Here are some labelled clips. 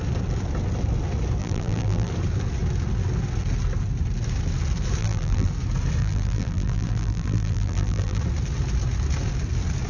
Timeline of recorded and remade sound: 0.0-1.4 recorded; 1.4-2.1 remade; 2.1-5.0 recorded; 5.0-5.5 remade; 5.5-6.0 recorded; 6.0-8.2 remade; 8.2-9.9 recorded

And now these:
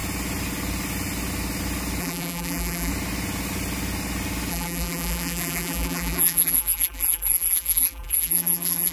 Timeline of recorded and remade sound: 0.0-2.0 recorded; 2.0-2.9 remade; 2.9-4.5 recorded; 4.5-8.9 remade

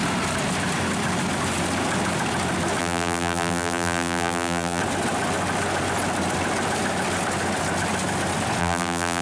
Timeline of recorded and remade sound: 0.0-2.8 recorded; 2.8-4.8 remade; 4.8-8.6 recorded; 8.6-9.2 remade

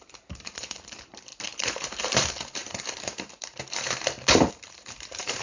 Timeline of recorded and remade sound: 0.0-5.4 remade

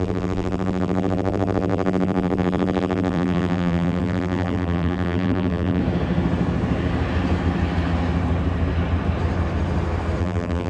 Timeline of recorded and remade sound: 0.0-5.8 remade; 5.8-10.2 recorded; 10.2-10.7 remade

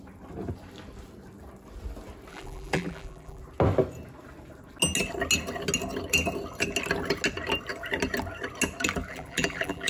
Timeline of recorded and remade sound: 0.0-2.3 recorded; 2.3-3.4 remade; 3.4-9.1 recorded; 9.1-9.9 remade